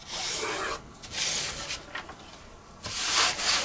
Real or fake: real